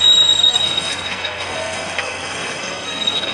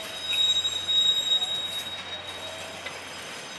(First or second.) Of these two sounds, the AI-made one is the first